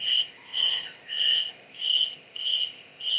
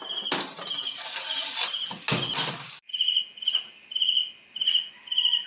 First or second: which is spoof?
first